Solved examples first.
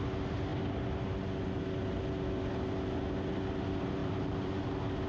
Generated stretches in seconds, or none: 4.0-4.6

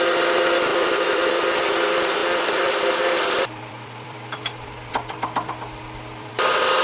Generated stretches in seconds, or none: 0.7-1.3; 2.2-6.3

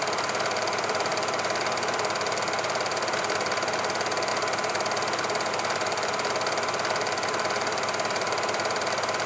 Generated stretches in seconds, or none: 0.0-4.3; 5.5-9.3

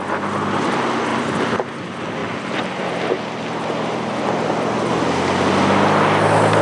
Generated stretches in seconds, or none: 1.1-1.7; 2.2-4.9

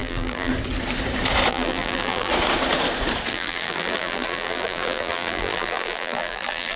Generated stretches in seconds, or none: 0.0-0.5; 1.5-2.3; 3.3-6.8

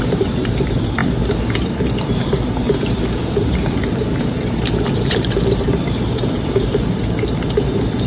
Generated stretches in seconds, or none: 0.0-1.0; 1.6-8.1